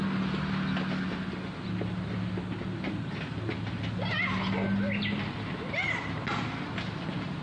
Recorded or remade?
recorded